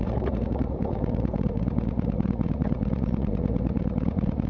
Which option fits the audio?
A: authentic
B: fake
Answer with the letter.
B